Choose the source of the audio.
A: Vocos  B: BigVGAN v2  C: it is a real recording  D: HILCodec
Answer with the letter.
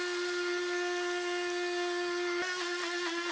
C